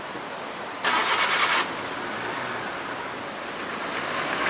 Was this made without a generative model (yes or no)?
yes